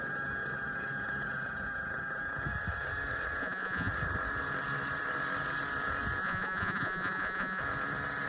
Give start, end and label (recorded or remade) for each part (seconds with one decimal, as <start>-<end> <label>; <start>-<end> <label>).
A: 0.0-3.4 recorded; 3.4-3.9 remade; 3.9-6.2 recorded; 6.2-7.6 remade; 7.6-8.3 recorded